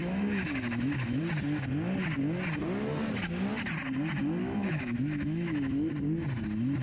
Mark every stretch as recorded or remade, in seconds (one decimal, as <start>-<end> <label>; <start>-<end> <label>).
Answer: 0.0-1.2 remade; 1.2-4.4 recorded; 4.4-5.9 remade; 5.9-6.8 recorded